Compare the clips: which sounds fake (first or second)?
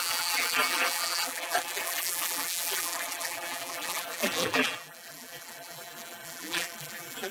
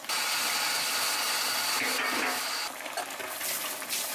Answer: first